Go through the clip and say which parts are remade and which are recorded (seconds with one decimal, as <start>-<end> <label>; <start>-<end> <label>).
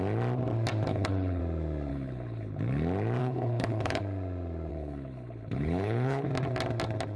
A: 0.0-0.9 recorded; 0.9-1.4 remade; 1.4-1.9 recorded; 1.9-2.6 remade; 2.6-3.2 recorded; 3.2-4.0 remade; 4.0-4.7 recorded; 4.7-6.3 remade; 6.3-7.2 recorded